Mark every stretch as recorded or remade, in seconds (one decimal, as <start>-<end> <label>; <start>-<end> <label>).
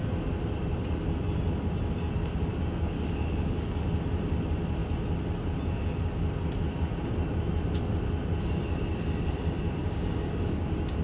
0.0-2.5 recorded; 2.5-3.9 remade; 3.9-9.8 recorded; 9.8-11.0 remade